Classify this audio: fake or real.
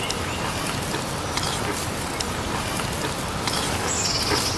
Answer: real